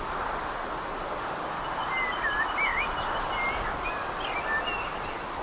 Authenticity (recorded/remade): recorded